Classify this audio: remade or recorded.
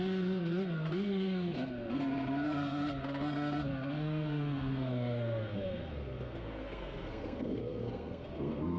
remade